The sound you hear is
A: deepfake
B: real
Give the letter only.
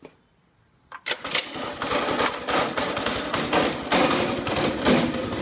B